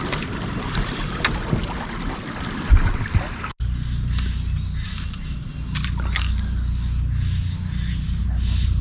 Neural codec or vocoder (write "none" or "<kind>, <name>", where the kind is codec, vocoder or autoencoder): none